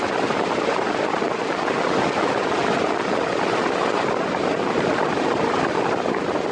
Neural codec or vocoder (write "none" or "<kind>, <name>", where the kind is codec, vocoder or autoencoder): none